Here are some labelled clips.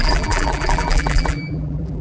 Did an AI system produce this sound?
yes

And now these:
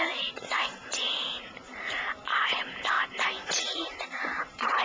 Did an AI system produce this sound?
yes